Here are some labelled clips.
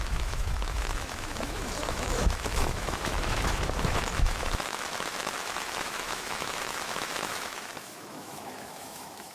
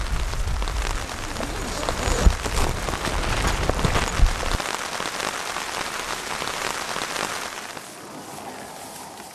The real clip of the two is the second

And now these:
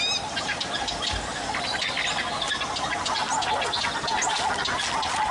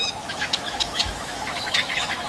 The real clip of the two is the first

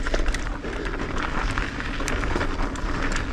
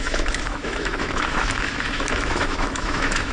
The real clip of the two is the first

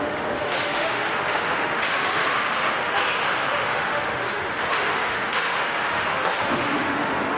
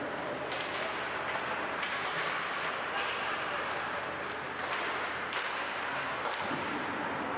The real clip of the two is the second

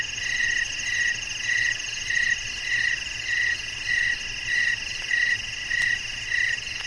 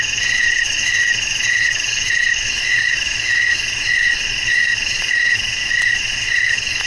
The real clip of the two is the first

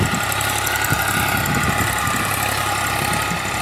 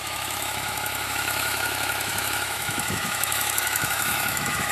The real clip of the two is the first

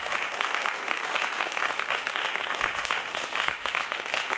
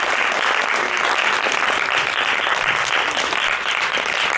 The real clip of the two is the second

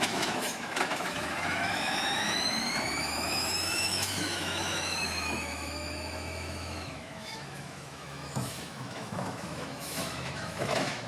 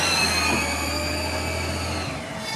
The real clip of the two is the second